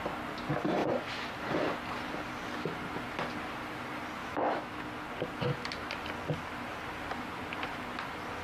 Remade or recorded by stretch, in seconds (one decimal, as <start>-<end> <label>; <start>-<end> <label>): 0.0-4.2 recorded; 4.2-4.8 remade; 4.8-8.4 recorded